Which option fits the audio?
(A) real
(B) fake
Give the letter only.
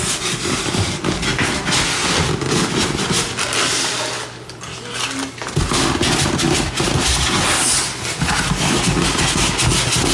A